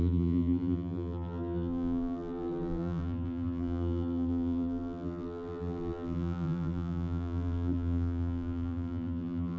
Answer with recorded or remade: remade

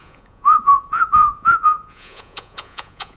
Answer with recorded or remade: remade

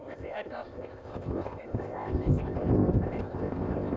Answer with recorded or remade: remade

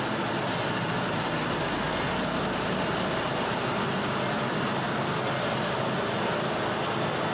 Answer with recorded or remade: recorded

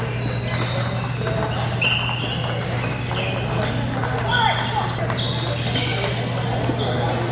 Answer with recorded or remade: recorded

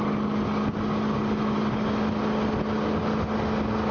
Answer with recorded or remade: recorded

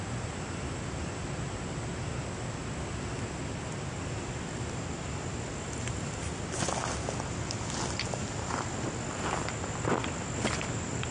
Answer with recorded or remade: recorded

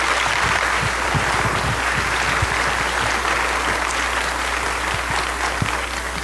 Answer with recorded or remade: recorded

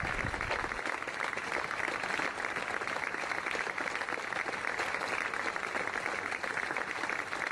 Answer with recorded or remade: recorded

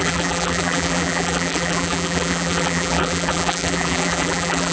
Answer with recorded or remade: remade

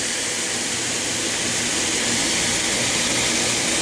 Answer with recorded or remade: recorded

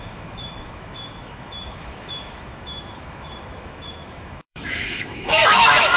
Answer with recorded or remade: remade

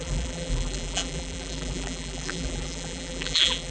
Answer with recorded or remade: remade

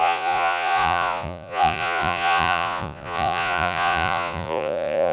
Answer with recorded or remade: remade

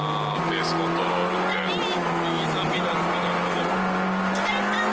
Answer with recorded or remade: recorded